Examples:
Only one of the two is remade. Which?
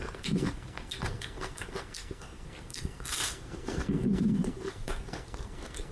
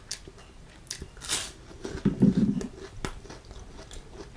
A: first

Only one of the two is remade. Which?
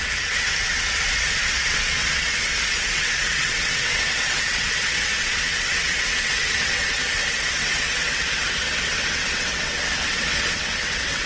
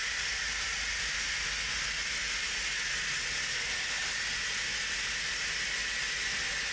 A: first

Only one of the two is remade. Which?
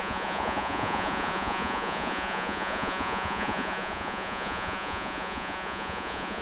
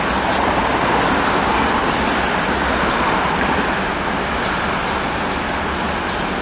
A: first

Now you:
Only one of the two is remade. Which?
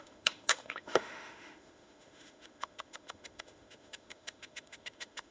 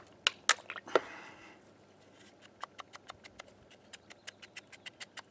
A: first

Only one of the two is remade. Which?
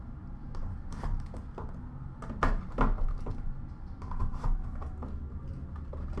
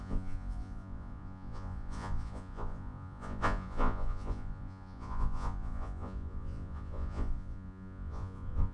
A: second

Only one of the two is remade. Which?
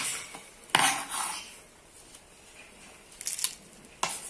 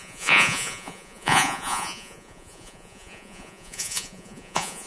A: second